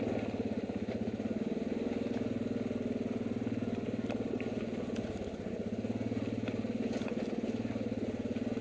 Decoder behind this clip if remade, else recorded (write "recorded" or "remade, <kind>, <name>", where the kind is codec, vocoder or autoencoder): recorded